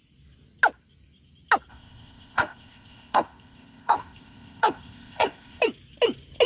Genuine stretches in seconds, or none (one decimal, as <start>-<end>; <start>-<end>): 0.0-1.7; 5.6-6.5